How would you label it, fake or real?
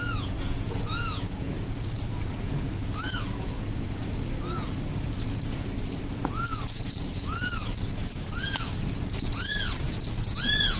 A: fake